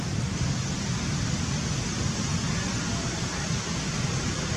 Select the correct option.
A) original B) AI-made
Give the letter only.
A